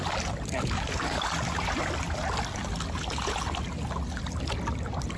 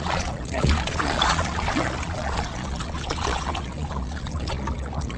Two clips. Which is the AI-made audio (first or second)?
second